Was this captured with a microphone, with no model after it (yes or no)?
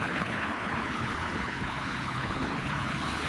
no